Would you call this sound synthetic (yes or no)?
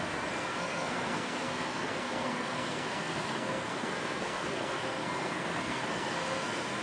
yes